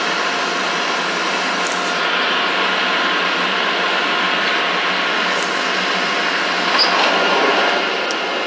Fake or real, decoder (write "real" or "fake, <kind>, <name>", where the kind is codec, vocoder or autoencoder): real